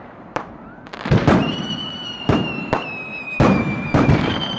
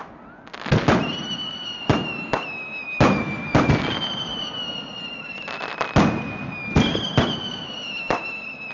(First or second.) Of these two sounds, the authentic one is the second